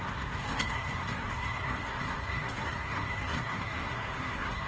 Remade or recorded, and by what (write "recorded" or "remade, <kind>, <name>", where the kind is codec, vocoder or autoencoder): remade, codec, SNAC